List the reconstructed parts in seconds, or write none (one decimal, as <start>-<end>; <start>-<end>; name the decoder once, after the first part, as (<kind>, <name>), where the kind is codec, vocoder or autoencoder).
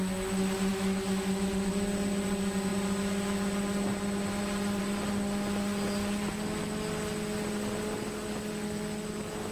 0.7-1.7 (autoencoder, DAC-VAE)